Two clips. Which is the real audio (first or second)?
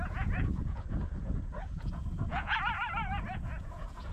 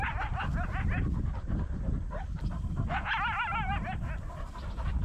second